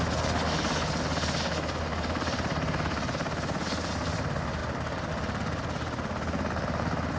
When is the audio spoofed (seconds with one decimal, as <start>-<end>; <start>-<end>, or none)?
none